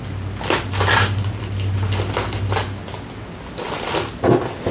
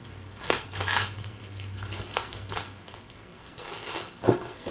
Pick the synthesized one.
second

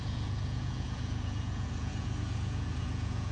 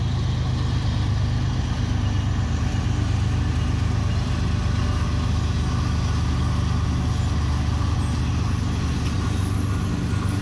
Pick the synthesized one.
first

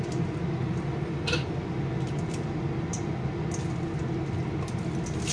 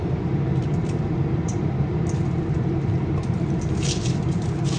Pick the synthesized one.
second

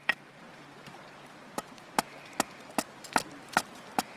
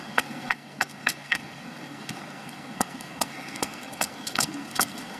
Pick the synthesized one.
second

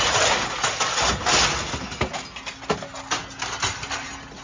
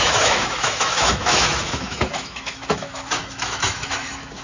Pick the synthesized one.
second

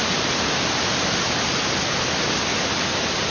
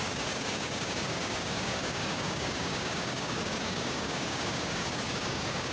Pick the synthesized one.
second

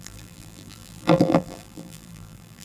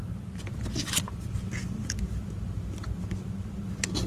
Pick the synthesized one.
first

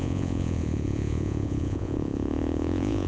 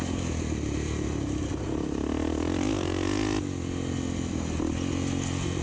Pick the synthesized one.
first